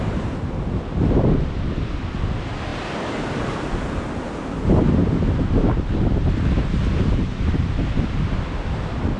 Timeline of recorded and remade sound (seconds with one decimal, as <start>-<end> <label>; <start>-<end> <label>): 0.0-9.2 recorded